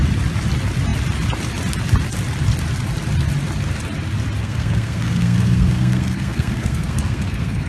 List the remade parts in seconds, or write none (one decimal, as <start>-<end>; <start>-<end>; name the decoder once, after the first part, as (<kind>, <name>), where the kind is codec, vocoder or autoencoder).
4.4-7.7 (codec, SNAC)